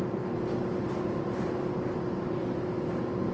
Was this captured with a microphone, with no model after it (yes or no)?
yes